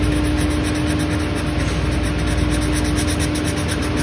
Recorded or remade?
recorded